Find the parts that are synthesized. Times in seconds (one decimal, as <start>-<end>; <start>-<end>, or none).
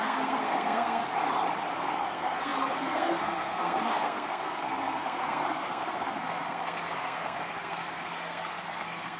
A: 0.0-1.0; 1.7-9.2